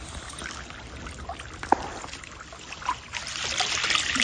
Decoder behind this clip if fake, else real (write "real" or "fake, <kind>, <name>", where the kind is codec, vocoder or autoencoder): real